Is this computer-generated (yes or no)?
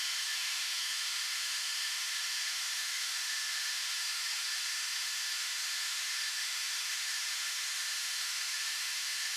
yes